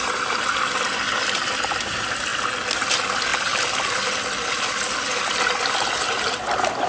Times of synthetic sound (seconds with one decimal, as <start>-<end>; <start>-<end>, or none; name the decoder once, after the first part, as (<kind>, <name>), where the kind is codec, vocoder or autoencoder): none